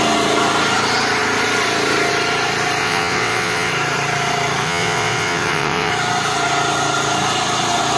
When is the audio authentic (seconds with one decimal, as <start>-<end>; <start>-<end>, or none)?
0.0-2.8; 3.7-4.6; 5.9-8.0